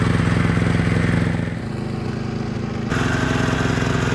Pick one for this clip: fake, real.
real